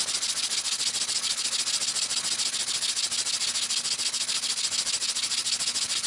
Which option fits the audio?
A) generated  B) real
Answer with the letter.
B